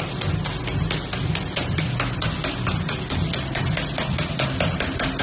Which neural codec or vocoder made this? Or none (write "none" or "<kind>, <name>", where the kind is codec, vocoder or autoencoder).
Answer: none